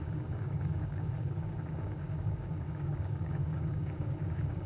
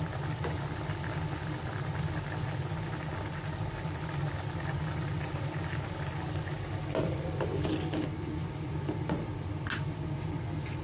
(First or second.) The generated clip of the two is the first